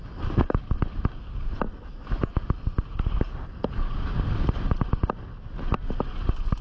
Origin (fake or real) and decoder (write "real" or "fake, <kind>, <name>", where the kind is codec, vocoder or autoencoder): real